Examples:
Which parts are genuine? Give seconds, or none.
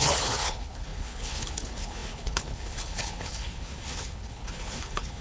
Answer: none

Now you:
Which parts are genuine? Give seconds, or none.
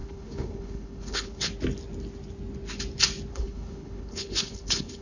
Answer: 1.5-3.3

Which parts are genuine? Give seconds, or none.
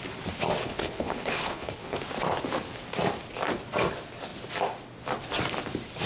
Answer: 0.0-0.6; 2.0-6.1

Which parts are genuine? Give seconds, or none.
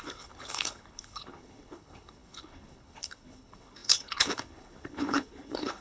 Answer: none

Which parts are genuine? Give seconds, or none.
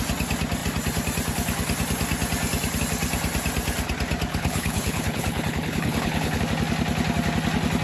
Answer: 0.0-4.3; 6.4-7.8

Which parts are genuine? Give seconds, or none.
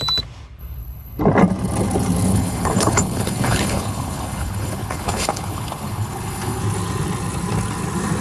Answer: 0.0-0.6; 1.2-2.3; 6.6-8.2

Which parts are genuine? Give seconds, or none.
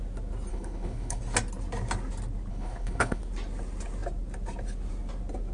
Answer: 0.0-0.5; 1.2-2.5; 3.2-5.5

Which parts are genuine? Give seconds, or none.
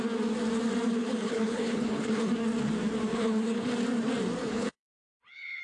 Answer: 0.0-1.0; 2.3-3.1; 3.7-4.4